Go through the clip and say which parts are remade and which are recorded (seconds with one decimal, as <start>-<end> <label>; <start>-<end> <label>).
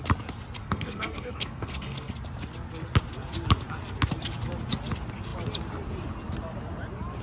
0.0-0.6 recorded; 0.6-2.1 remade; 2.1-7.2 recorded